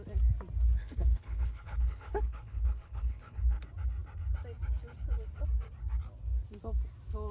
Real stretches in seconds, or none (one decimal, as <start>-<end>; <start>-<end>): 0.0-0.8; 3.6-7.3